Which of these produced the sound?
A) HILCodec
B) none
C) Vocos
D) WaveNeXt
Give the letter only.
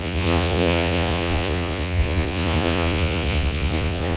C